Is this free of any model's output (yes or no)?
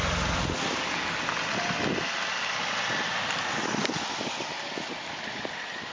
yes